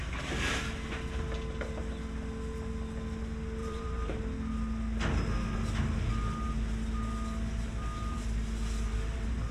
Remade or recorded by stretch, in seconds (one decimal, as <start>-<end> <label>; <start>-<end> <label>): 0.0-3.6 recorded; 3.6-4.2 remade; 4.2-9.5 recorded